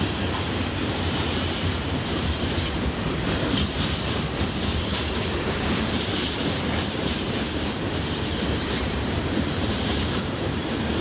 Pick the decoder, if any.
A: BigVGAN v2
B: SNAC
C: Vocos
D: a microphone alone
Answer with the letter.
A